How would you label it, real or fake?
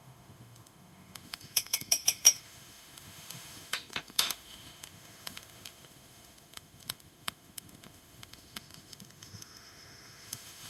fake